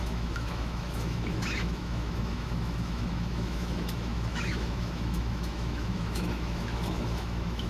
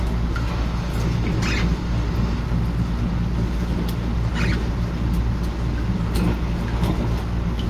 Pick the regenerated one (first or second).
first